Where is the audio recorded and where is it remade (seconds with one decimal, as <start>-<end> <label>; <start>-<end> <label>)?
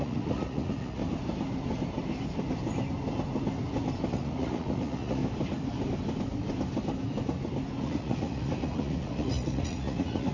0.0-1.0 remade; 1.0-4.1 recorded; 4.1-5.2 remade; 5.2-7.8 recorded; 7.8-10.3 remade